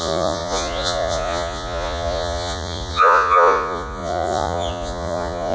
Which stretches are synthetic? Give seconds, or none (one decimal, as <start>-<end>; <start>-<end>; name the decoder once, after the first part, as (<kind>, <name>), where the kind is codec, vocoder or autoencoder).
0.0-5.5 (vocoder, Vocos)